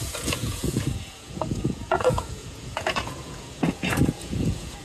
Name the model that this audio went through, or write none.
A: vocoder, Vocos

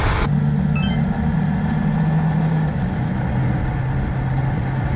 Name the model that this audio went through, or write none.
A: none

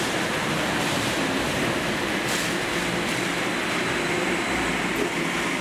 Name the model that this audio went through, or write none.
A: none